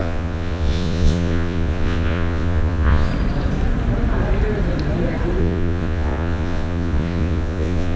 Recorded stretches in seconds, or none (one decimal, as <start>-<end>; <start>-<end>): 3.1-5.4